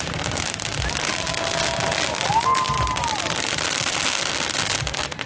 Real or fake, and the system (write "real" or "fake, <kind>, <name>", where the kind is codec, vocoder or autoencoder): real